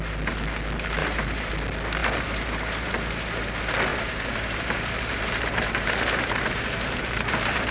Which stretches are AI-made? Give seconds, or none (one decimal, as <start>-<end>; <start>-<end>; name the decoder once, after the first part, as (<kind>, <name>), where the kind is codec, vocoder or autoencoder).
1.0-1.5 (vocoder, BigVGAN v2); 2.0-3.5; 3.9-7.7